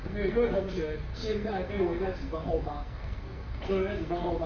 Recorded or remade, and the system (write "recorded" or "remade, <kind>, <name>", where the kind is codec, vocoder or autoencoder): remade, codec, SNAC